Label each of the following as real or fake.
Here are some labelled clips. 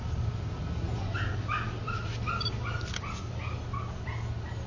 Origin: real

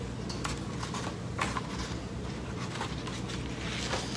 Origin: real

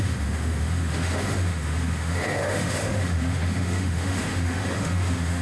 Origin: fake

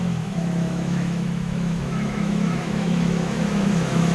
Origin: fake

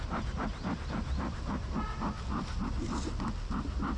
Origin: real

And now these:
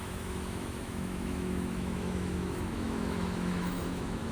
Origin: fake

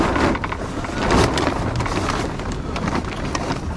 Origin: real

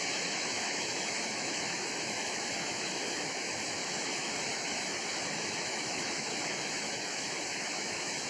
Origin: fake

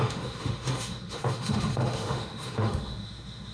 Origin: fake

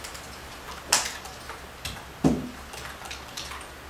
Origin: real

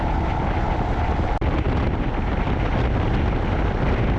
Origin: real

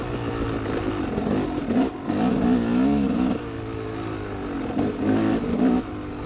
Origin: real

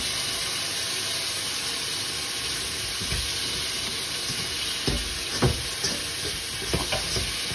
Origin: real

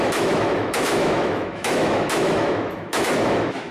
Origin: fake